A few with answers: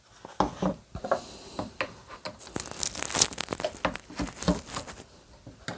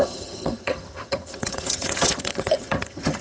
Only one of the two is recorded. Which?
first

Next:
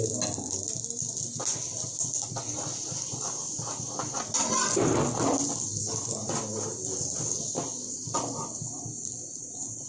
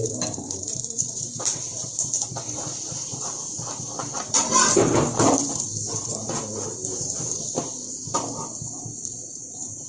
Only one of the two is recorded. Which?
first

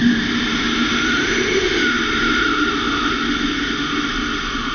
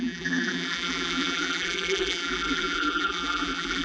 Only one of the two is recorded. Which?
first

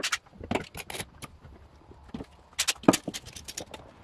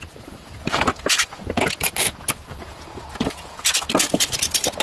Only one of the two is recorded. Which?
first